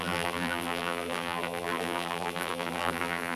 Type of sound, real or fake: fake